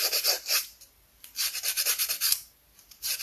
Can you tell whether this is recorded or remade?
remade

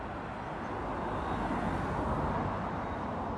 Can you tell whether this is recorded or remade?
recorded